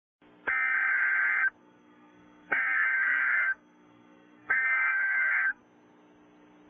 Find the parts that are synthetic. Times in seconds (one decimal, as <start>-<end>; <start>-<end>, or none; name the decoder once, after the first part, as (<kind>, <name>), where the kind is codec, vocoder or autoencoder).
1.6-5.6 (codec, SNAC)